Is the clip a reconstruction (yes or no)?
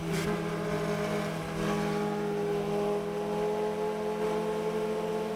no